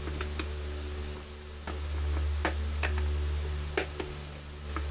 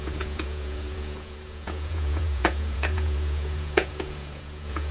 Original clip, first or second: first